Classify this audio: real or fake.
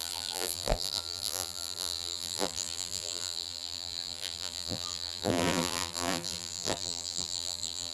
fake